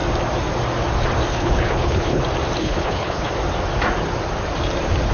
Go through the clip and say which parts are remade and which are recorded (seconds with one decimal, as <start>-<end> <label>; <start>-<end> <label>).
0.0-1.3 recorded; 1.3-2.2 remade; 2.2-2.6 recorded; 2.6-3.3 remade; 3.3-5.1 recorded